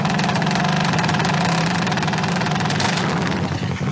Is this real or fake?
real